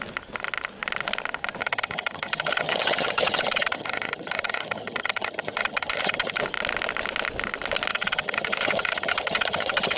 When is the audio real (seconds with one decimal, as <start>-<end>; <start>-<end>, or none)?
0.0-1.6; 6.4-7.9